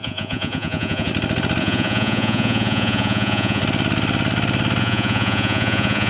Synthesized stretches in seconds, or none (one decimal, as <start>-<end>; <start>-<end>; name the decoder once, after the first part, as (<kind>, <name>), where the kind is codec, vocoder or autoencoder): 0.0-1.1 (vocoder, Vocos); 1.6-3.6; 4.8-6.1